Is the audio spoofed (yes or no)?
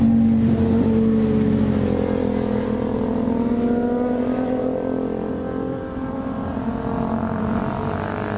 no